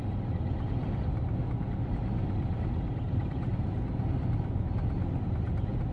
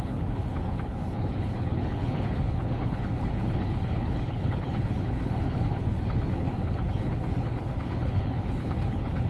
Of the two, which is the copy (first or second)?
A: second